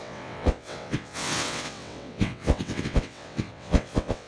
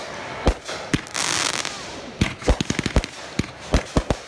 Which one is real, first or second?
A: second